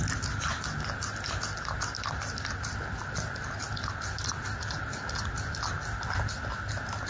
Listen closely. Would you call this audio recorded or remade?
recorded